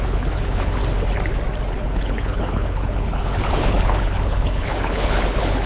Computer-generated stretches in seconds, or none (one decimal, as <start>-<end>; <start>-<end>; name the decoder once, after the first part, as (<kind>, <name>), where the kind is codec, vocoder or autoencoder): 0.0-0.8 (codec, HILCodec); 1.7-5.7